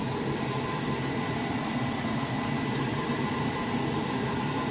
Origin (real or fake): real